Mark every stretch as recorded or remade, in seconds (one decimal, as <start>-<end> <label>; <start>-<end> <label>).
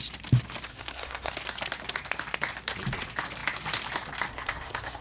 0.0-0.7 recorded; 0.7-1.3 remade; 1.3-4.3 recorded; 4.3-5.0 remade